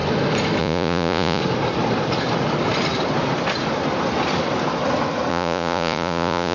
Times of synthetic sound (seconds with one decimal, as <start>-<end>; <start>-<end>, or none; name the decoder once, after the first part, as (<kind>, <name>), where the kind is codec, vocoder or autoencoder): 0.6-1.4 (vocoder, Vocos); 5.3-6.5